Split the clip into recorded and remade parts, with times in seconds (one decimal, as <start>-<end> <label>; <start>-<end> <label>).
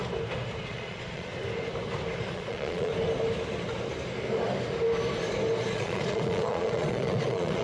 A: 0.0-0.7 recorded; 0.7-1.3 remade; 1.3-2.3 recorded; 2.3-2.9 remade; 2.9-5.7 recorded; 5.7-7.6 remade